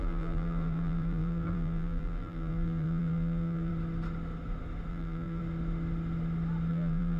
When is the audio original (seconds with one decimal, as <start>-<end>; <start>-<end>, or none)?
3.7-4.9; 5.4-6.7